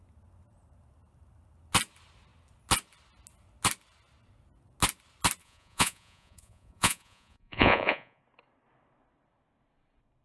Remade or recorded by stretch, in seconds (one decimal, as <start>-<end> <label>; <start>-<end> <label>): 0.0-5.4 recorded; 5.4-8.2 remade; 8.2-10.2 recorded